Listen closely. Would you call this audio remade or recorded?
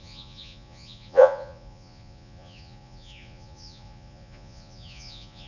remade